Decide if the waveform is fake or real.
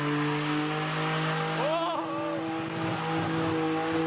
real